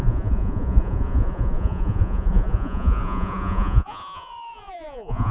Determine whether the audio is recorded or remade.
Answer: remade